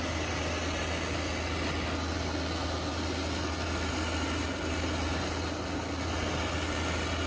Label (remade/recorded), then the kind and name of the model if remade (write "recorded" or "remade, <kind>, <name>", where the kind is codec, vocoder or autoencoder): recorded